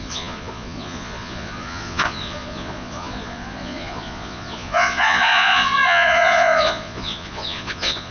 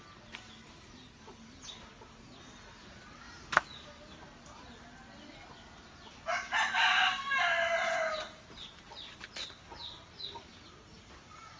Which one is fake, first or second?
first